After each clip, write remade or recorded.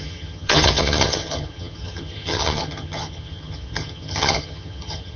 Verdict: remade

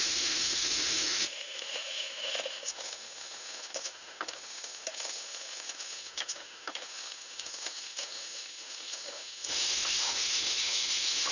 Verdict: remade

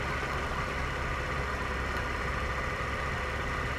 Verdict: recorded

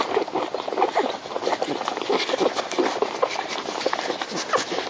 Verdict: recorded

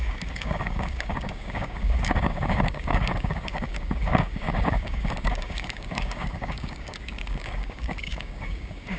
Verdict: remade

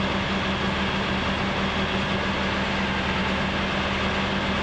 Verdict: recorded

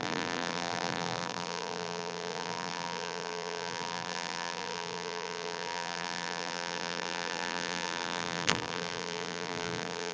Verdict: remade